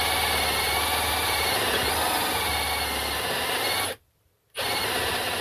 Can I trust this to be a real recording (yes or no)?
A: yes